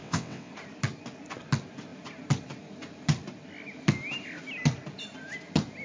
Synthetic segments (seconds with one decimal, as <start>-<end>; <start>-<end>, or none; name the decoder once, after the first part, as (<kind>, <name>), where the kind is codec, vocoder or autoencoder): 0.0-0.5 (vocoder, WaveNeXt)